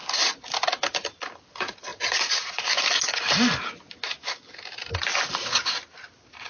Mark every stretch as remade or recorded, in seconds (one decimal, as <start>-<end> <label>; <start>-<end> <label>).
0.0-6.5 recorded